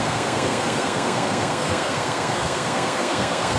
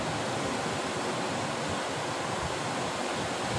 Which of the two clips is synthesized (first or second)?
first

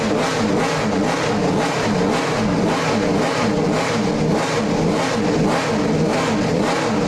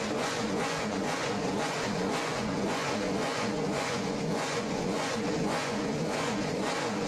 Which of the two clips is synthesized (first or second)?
second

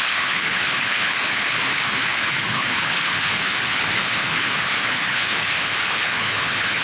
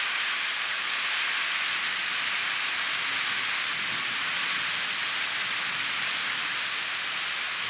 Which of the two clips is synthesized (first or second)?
first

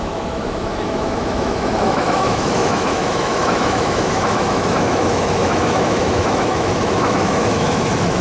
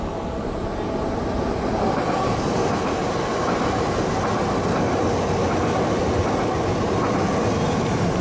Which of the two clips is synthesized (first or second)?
first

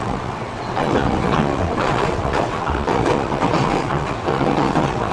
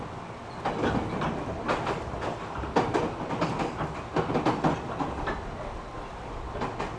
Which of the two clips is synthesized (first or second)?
first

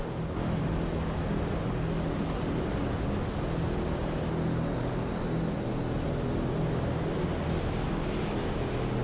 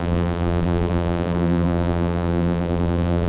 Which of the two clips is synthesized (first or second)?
second